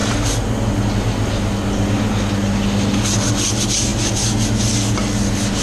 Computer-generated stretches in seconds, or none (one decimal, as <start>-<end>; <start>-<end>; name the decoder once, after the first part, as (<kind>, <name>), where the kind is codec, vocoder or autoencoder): none